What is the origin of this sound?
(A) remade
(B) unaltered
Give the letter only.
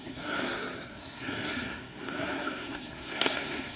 A